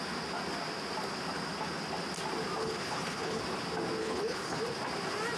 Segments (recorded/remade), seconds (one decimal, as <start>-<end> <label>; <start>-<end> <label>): 0.0-2.6 recorded; 2.6-3.4 remade; 3.4-4.0 recorded; 4.0-4.6 remade; 4.6-5.4 recorded